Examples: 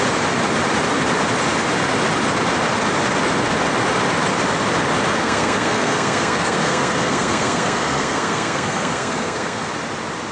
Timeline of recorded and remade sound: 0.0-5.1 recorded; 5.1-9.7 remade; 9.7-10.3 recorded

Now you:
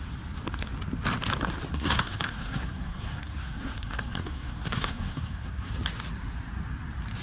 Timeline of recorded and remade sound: 0.0-1.7 recorded; 1.7-5.7 remade; 5.7-7.2 recorded

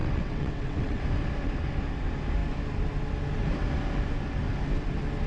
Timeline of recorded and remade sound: 0.0-1.0 remade; 1.0-5.3 recorded

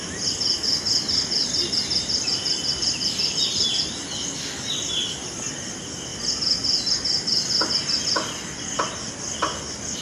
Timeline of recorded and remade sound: 0.0-1.6 recorded; 1.6-3.8 remade; 3.8-10.0 recorded

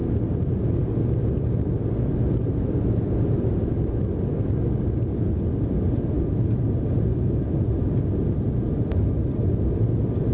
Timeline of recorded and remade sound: 0.0-10.3 recorded

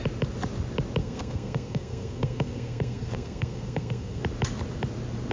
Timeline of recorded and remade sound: 0.0-1.0 recorded; 1.0-4.2 remade; 4.2-5.3 recorded

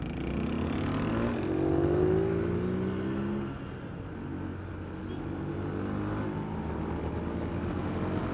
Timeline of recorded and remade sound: 0.0-8.3 recorded

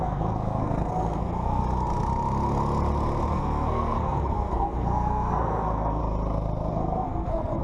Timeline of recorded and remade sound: 0.0-1.6 remade; 1.6-3.3 recorded; 3.3-6.0 remade; 6.0-6.7 recorded; 6.7-7.6 remade